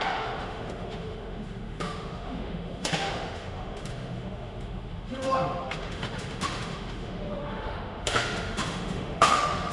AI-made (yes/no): yes